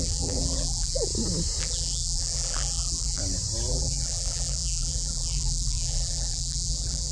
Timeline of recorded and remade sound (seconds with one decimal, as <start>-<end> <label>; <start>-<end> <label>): 0.0-1.1 remade; 1.1-1.6 recorded; 1.6-3.2 remade; 3.2-3.7 recorded; 3.7-7.1 remade